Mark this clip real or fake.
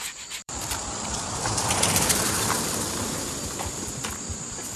fake